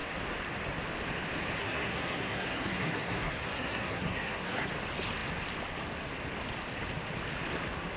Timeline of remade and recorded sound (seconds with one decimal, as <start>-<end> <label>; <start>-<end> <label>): 0.0-1.6 recorded; 1.6-4.7 remade; 4.7-8.0 recorded